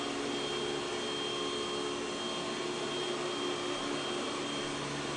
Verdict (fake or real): real